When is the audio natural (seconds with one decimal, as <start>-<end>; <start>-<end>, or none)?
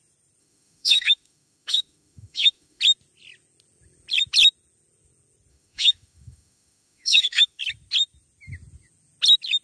0.0-0.4; 2.8-5.5; 7.6-9.6